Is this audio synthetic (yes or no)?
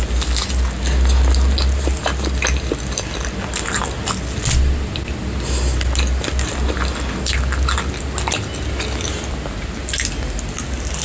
no